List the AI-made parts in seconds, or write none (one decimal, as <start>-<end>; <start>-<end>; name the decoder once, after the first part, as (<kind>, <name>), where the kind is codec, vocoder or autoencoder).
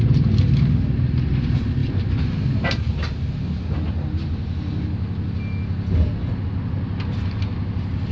none